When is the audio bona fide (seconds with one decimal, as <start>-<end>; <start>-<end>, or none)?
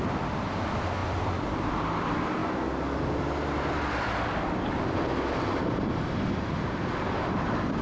0.0-7.8